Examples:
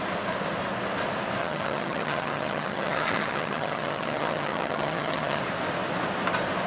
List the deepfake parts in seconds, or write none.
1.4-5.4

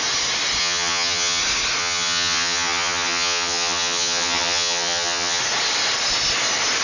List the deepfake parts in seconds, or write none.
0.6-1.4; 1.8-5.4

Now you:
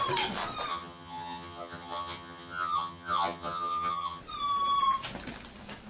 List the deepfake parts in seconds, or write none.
0.7-4.2

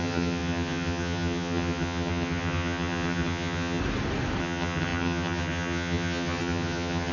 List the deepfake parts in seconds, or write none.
0.0-3.8; 4.4-7.1